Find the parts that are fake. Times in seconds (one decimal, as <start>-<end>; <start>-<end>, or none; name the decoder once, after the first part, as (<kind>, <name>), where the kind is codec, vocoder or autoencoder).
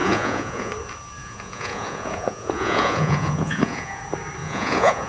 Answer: 0.0-0.7 (vocoder, Vocos); 1.2-4.0; 4.4-5.1